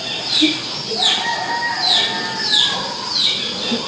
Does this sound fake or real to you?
real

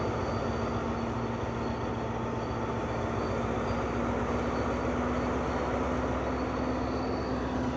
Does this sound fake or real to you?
real